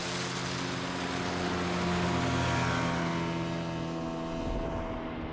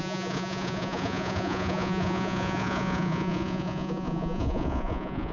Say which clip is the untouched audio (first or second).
first